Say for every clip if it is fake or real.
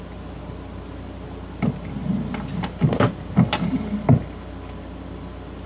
fake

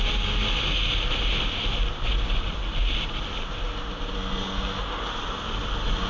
real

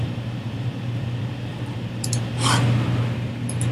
fake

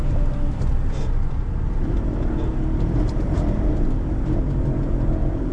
fake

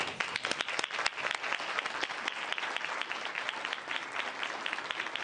real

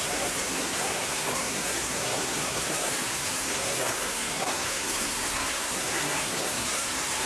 fake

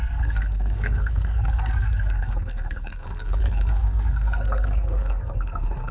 fake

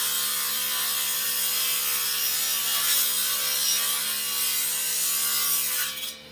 real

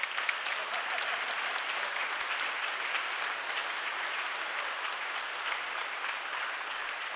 real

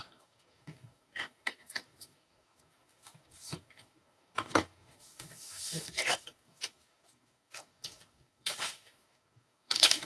fake